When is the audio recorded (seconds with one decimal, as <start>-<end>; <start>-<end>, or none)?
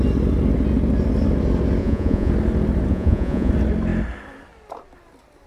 0.0-1.8; 2.3-2.9; 3.5-5.5